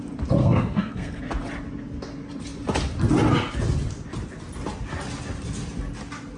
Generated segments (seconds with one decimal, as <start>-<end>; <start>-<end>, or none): 0.4-1.2